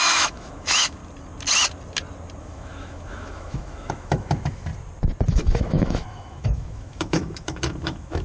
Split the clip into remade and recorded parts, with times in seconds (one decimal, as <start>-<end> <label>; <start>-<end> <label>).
0.0-1.0 remade; 1.0-2.4 recorded; 2.4-4.7 remade; 4.7-5.3 recorded; 5.3-8.2 remade